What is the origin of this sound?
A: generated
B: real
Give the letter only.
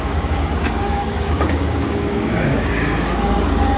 A